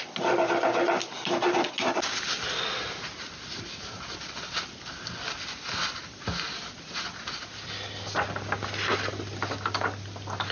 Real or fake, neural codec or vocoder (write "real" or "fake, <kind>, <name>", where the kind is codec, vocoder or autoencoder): real